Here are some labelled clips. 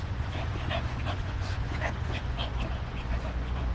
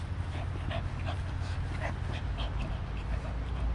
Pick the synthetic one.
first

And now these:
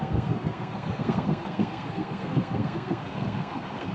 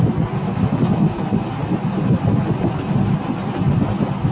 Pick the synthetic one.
first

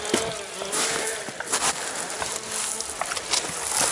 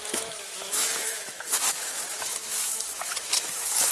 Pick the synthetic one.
second